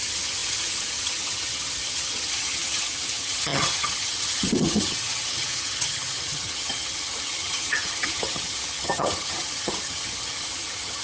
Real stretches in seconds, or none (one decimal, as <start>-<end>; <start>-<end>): none

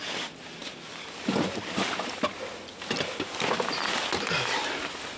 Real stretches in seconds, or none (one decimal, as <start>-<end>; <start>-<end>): 0.0-5.2

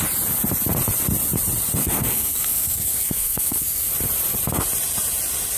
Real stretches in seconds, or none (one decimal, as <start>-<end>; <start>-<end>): 0.0-1.8; 3.9-5.6

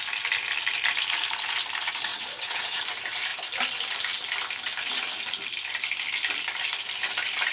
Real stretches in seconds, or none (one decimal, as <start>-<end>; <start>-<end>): 0.0-2.1; 2.8-7.5